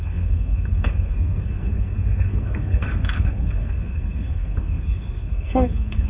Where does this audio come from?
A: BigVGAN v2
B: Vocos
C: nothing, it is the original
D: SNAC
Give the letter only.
D